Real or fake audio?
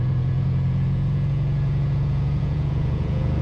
fake